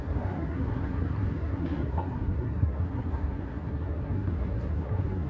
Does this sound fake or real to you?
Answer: fake